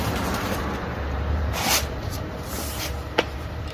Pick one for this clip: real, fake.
fake